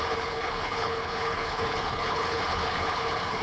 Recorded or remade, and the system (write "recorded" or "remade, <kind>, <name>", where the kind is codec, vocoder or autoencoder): remade, codec, HILCodec